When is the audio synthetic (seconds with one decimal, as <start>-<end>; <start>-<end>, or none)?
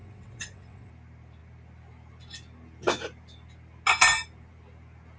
0.0-0.9